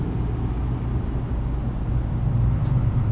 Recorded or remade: recorded